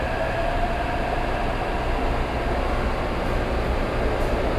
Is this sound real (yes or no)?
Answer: yes